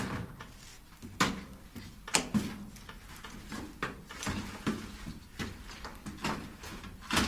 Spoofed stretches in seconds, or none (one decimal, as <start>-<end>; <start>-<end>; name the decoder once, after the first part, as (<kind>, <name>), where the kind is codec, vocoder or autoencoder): none